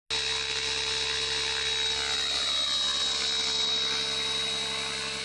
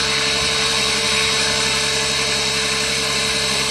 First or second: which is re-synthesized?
second